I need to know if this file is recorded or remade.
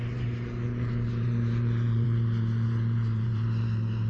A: remade